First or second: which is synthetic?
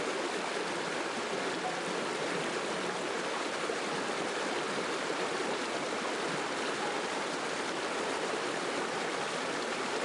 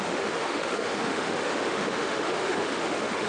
second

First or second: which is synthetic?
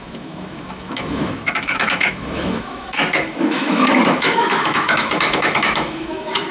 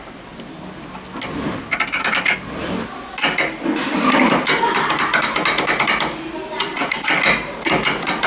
first